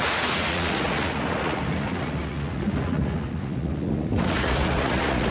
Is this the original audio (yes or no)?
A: no